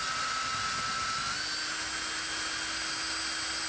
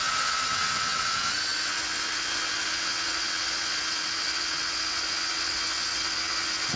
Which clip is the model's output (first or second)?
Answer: second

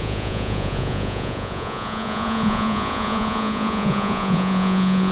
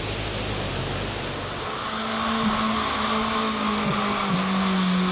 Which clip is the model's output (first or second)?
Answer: first